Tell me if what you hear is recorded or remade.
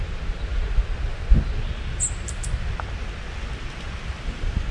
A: recorded